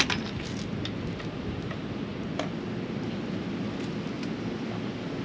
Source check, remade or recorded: recorded